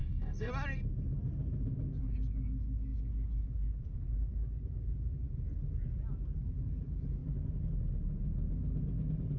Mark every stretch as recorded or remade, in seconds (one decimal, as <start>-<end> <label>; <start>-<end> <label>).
0.0-0.5 remade; 0.5-9.4 recorded